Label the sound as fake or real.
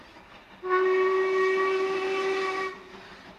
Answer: real